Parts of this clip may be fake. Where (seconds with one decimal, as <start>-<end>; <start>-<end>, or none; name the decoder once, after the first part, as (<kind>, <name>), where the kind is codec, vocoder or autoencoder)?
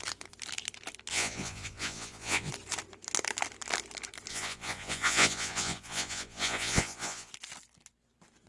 1.1-2.5 (vocoder, Vocos); 4.3-7.3